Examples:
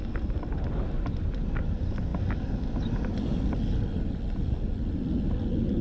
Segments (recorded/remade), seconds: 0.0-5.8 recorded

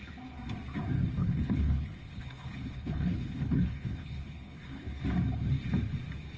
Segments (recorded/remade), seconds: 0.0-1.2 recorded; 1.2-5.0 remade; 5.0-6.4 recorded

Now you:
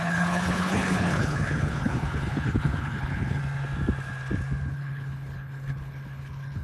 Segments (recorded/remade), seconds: 0.0-3.4 remade; 3.4-4.7 recorded; 4.7-6.6 remade

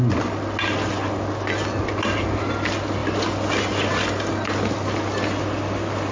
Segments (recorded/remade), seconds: 0.0-6.1 recorded

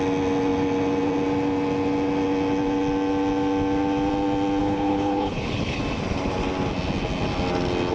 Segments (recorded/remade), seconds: 0.0-4.6 recorded; 4.6-5.8 remade; 5.8-7.9 recorded

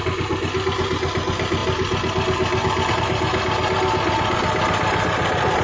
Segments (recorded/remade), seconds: 0.0-5.6 recorded